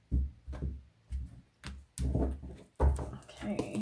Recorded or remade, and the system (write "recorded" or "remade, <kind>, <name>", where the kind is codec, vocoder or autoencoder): recorded